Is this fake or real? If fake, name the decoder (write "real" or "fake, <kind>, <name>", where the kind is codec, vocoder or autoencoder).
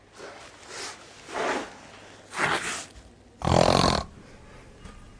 real